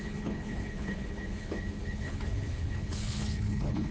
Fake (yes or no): yes